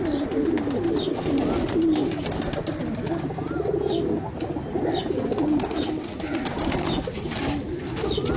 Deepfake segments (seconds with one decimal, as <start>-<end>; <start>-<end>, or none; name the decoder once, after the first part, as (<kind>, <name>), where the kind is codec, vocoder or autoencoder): none